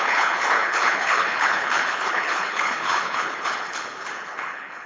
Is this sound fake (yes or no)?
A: yes